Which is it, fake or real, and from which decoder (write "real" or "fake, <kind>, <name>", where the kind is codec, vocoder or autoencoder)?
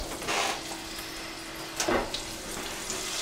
real